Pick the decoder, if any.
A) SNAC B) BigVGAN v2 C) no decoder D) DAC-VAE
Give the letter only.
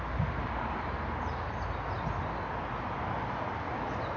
C